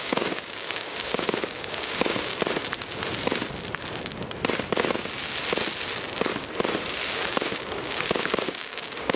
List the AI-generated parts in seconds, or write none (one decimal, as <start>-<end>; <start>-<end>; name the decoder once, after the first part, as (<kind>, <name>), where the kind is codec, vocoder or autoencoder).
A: 0.0-2.3 (codec, DAC); 7.1-9.2